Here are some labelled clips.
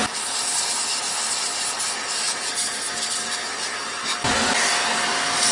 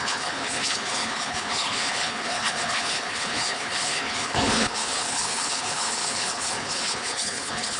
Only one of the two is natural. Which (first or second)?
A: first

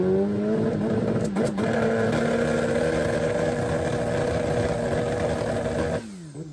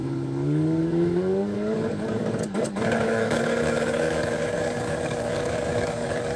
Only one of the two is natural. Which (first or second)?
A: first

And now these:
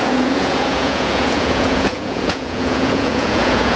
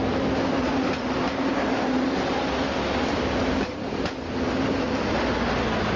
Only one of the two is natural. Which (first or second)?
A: second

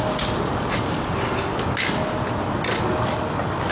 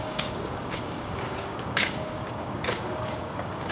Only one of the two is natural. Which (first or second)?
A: first